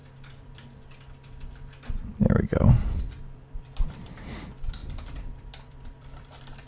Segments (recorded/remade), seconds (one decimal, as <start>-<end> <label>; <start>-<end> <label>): 0.0-3.0 recorded; 3.0-4.8 remade; 4.8-5.4 recorded; 5.4-6.7 remade